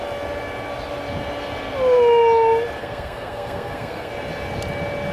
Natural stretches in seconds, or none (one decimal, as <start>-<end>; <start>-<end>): 0.0-2.8; 4.1-5.1